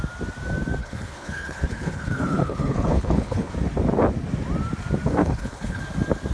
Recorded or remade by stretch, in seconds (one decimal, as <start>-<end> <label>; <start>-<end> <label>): 0.0-0.8 recorded; 0.8-3.5 remade; 3.5-5.2 recorded; 5.2-5.8 remade; 5.8-6.3 recorded